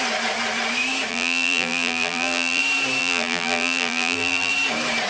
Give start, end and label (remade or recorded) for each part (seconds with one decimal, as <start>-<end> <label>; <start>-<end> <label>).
0.0-1.1 recorded; 1.1-2.6 remade; 2.6-3.0 recorded; 3.0-4.5 remade; 4.5-5.1 recorded